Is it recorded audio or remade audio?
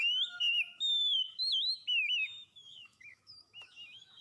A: remade